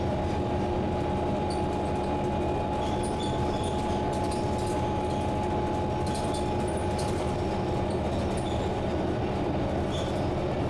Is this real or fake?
real